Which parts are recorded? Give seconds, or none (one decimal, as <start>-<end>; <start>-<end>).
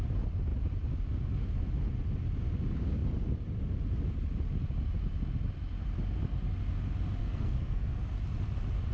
0.0-7.2; 8.0-8.9